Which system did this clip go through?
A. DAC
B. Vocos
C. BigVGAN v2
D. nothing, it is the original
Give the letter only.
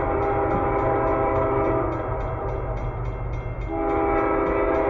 D